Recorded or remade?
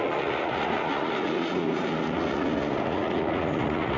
remade